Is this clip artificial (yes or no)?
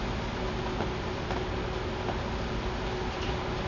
no